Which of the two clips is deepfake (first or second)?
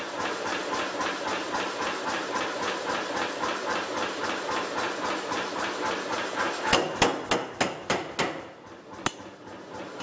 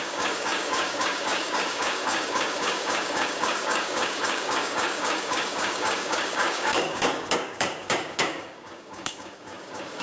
second